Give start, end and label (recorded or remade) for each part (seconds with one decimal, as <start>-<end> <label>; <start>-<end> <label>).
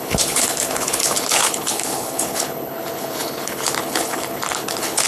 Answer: 0.0-5.1 remade